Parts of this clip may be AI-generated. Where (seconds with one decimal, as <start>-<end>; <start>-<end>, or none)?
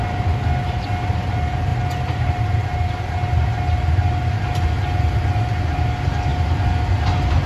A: none